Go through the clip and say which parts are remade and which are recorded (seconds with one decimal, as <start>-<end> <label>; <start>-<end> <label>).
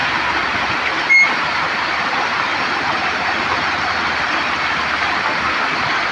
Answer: 0.0-6.1 recorded